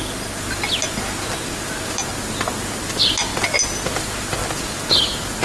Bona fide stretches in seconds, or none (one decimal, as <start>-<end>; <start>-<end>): 0.0-5.4